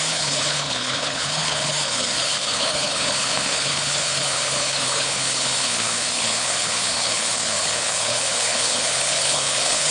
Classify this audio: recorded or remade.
remade